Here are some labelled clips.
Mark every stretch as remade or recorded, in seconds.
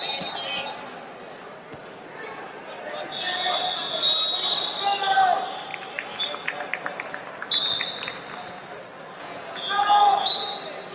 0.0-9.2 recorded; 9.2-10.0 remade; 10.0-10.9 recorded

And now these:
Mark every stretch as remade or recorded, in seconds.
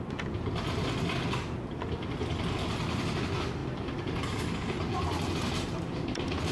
0.0-6.5 recorded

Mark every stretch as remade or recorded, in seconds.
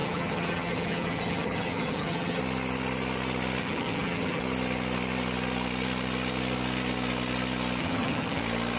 0.0-2.4 remade; 2.4-3.6 recorded; 3.6-4.4 remade; 4.4-7.8 recorded; 7.8-8.4 remade; 8.4-8.8 recorded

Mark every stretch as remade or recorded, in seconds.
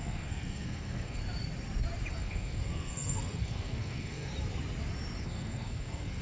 0.0-1.2 remade; 1.2-2.1 recorded; 2.1-4.3 remade; 4.3-5.2 recorded; 5.2-6.2 remade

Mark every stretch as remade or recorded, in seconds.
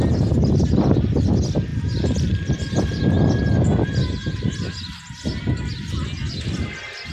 0.0-7.1 recorded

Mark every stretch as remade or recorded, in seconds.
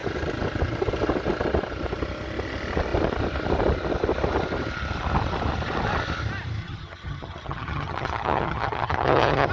0.0-6.6 recorded; 6.6-9.5 remade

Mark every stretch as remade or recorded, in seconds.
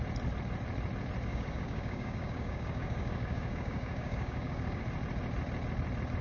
0.0-1.3 recorded; 1.3-4.8 remade; 4.8-6.2 recorded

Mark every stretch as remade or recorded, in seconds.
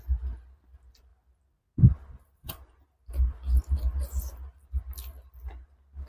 0.0-6.1 recorded